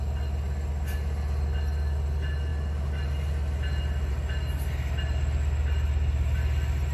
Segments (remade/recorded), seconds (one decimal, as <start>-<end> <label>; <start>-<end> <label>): 0.0-6.9 recorded